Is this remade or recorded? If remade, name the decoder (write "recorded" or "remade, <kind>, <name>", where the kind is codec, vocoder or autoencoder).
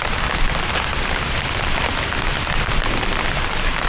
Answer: recorded